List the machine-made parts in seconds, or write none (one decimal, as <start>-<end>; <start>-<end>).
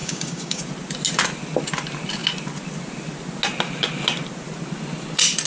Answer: 0.0-0.6